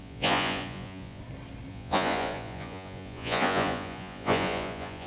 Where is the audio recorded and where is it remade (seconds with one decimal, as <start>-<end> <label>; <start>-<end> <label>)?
0.0-1.2 remade; 1.2-1.7 recorded; 1.7-5.1 remade